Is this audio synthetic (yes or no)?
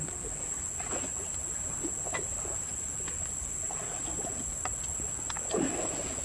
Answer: no